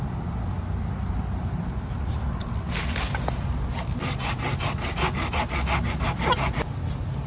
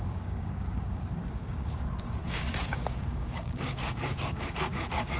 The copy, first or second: second